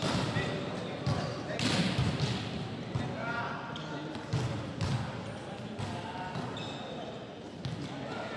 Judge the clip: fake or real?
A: real